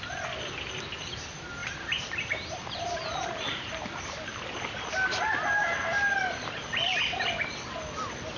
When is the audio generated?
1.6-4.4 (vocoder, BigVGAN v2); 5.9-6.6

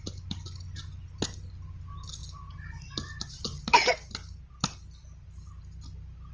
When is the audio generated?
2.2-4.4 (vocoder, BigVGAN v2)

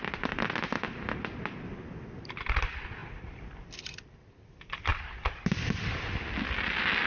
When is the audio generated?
3.0-3.7 (vocoder, BigVGAN v2)